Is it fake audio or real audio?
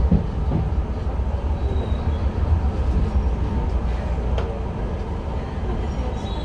real